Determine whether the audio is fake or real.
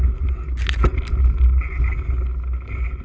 real